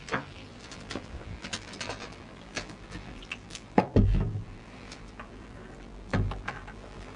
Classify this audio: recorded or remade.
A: remade